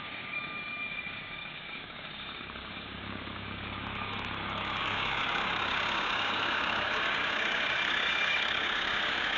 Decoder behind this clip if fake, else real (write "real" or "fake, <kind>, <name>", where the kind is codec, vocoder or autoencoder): fake, codec, DAC